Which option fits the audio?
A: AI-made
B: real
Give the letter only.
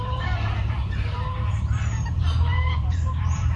A